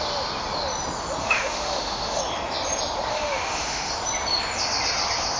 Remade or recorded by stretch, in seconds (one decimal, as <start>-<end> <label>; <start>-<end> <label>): 0.0-1.2 recorded; 1.2-2.2 remade; 2.2-3.1 recorded; 3.1-3.9 remade; 3.9-5.4 recorded